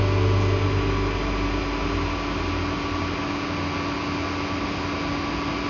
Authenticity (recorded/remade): recorded